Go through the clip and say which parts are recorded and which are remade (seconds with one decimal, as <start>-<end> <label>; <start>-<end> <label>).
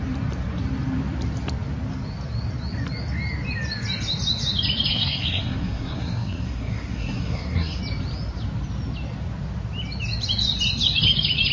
0.0-4.9 recorded; 4.9-7.8 remade; 7.8-11.5 recorded